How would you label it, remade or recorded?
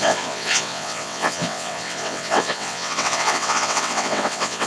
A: remade